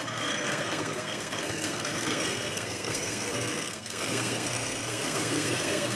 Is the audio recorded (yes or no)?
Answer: no